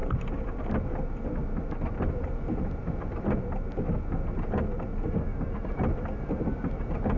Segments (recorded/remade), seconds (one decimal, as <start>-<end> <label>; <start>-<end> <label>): 0.0-0.6 remade; 0.6-7.2 recorded